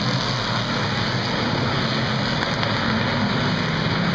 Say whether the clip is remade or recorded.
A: recorded